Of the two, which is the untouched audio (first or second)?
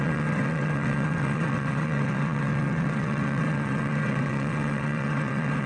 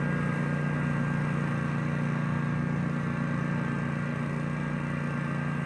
second